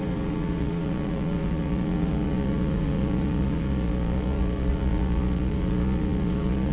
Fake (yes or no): yes